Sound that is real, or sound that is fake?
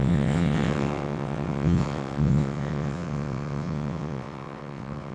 fake